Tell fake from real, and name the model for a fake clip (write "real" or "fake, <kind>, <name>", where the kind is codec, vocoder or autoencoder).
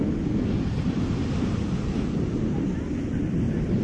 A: real